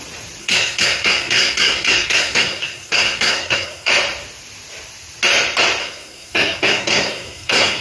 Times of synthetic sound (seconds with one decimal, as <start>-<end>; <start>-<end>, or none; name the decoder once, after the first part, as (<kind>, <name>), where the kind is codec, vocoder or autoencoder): 0.4-3.9 (codec, SNAC); 5.8-7.8